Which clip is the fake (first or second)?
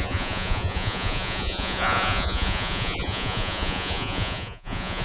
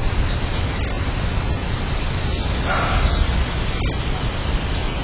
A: first